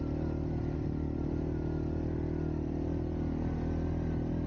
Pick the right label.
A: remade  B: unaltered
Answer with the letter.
B